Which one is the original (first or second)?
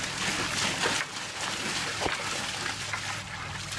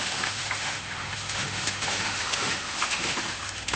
first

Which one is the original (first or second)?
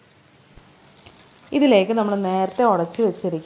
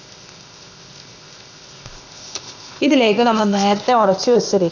first